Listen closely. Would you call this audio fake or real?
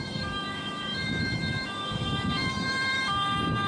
fake